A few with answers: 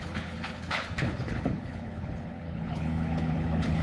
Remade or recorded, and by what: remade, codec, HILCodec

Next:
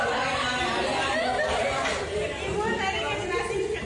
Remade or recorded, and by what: recorded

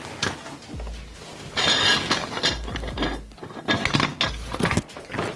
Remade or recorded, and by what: recorded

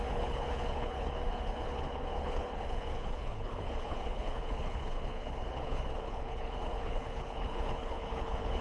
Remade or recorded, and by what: remade, codec, HILCodec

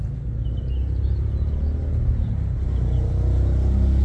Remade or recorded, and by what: recorded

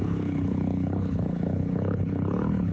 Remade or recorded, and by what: remade, codec, HILCodec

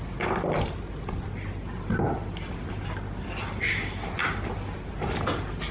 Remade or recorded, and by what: recorded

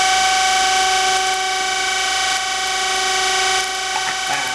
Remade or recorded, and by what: recorded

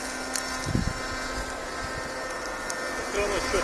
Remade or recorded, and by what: recorded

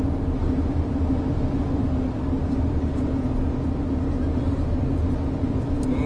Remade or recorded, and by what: recorded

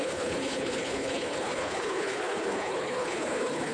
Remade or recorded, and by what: remade, codec, HILCodec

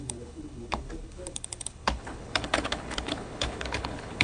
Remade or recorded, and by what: remade, codec, HILCodec